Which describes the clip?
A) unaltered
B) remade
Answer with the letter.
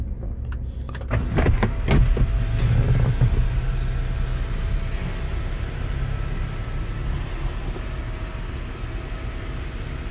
A